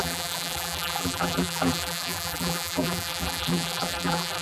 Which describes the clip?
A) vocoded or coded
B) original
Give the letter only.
A